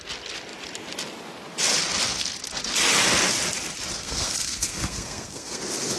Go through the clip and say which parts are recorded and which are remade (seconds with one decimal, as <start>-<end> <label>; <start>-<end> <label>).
0.0-4.0 recorded; 4.0-5.6 remade; 5.6-6.0 recorded

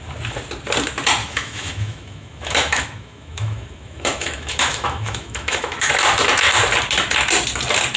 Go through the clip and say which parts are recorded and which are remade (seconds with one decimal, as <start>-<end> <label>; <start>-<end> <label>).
0.0-1.2 recorded; 1.2-5.9 remade; 5.9-8.0 recorded

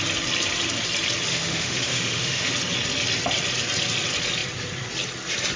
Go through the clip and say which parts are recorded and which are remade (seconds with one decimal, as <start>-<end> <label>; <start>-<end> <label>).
0.0-1.3 recorded; 1.3-2.5 remade; 2.5-5.6 recorded

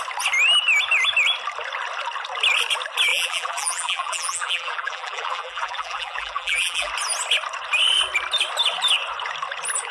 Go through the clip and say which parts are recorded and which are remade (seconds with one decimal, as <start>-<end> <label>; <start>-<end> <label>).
0.0-3.1 recorded; 3.1-6.9 remade; 6.9-9.9 recorded

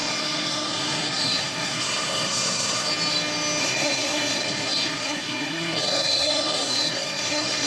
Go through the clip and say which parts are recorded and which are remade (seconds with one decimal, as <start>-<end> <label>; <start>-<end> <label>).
0.0-2.9 remade; 2.9-3.6 recorded; 3.6-7.7 remade

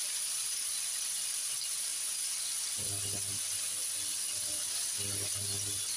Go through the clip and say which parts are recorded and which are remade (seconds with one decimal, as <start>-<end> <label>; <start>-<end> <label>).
0.0-6.0 recorded

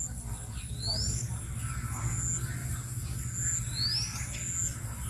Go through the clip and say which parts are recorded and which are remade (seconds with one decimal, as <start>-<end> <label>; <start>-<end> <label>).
0.0-0.9 recorded; 0.9-1.5 remade; 1.5-5.1 recorded

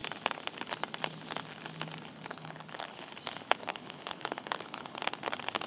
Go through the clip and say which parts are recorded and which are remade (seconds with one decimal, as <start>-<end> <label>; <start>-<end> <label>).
0.0-2.3 recorded; 2.3-3.1 remade; 3.1-3.6 recorded; 3.6-5.0 remade; 5.0-5.7 recorded